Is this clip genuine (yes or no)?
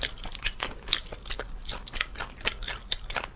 yes